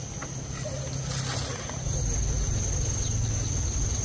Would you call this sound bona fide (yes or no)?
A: yes